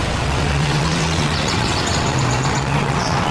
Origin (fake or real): fake